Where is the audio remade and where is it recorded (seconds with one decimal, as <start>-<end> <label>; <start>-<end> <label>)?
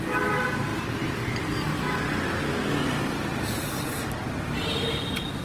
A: 0.0-5.4 recorded